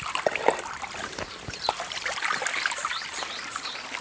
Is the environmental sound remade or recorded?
remade